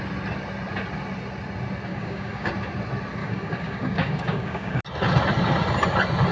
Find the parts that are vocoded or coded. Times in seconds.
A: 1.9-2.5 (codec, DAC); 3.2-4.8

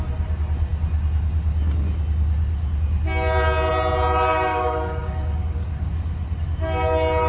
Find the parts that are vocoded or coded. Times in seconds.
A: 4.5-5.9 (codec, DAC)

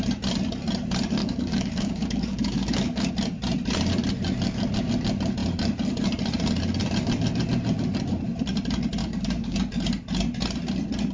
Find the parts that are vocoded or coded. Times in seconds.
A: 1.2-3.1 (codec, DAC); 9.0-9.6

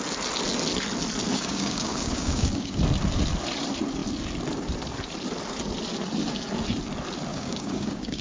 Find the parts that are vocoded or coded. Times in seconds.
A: 1.3-2.8 (codec, DAC); 7.3-8.2

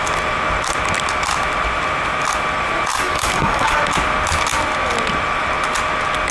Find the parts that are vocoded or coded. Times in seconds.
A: 2.9-3.8 (codec, DAC)